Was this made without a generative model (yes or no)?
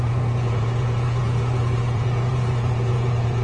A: no